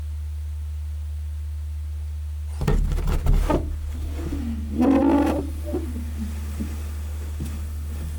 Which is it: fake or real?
real